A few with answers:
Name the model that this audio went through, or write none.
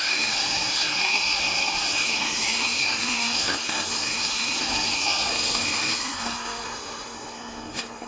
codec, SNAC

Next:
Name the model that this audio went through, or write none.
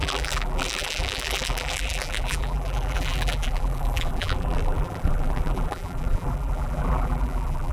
vocoder, BigVGAN v2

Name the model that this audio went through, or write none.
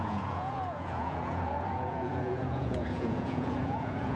vocoder, Vocos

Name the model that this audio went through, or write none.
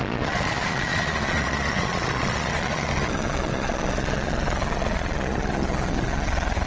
vocoder, Vocos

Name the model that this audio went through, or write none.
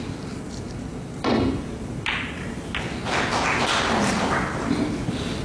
none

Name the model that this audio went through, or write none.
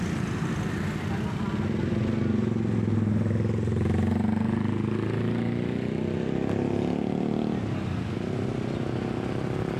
none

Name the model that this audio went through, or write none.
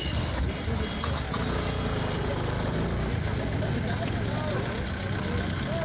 none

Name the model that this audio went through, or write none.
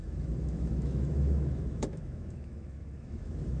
autoencoder, DAC-VAE